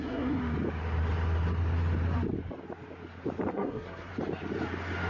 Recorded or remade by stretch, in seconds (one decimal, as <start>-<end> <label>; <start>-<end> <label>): 0.0-0.4 remade; 0.4-3.5 recorded; 3.5-4.1 remade; 4.1-5.1 recorded